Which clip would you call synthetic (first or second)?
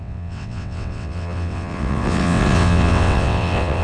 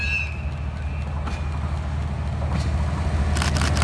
first